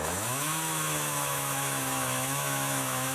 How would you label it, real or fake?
fake